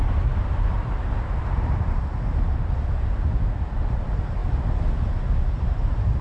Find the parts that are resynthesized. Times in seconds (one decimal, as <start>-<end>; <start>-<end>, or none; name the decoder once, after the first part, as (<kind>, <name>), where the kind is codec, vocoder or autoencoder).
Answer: 0.0-2.1 (vocoder, BigVGAN v2); 3.5-4.4; 5.7-6.2